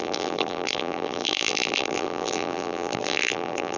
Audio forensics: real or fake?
fake